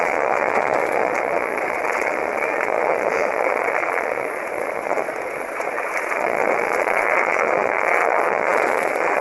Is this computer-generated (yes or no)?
yes